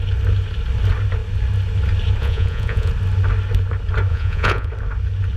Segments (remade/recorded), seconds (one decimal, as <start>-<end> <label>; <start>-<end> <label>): 0.0-2.2 recorded; 2.2-2.9 remade; 2.9-4.1 recorded; 4.1-4.7 remade; 4.7-5.4 recorded